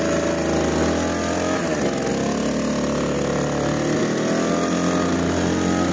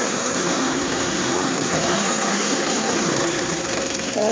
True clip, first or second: first